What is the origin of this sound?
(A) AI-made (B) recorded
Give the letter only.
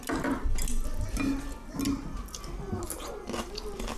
B